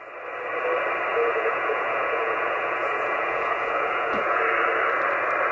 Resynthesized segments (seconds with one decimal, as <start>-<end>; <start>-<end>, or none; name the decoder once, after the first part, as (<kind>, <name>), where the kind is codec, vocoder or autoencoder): 1.1-4.4 (vocoder, Vocos)